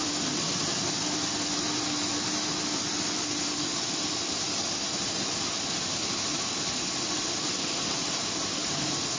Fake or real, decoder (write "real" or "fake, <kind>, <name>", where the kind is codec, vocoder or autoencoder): fake, vocoder, BigVGAN v2